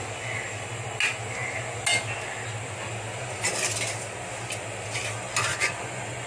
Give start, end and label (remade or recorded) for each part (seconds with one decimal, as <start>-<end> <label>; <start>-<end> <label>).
0.0-5.5 recorded; 5.5-6.3 remade